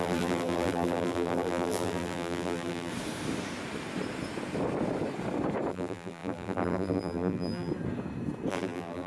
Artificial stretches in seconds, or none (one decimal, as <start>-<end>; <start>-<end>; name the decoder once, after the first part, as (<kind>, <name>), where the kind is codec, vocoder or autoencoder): 0.0-2.9 (vocoder, BigVGAN v2); 5.7-7.7; 8.5-9.1